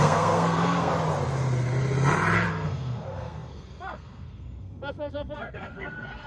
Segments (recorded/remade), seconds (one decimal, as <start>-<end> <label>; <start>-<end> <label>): 0.0-0.9 remade; 0.9-2.5 recorded; 2.5-6.3 remade